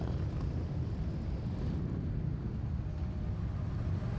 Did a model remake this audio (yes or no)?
no